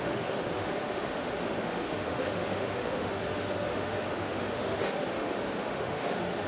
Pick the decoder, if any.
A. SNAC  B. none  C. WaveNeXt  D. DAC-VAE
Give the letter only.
D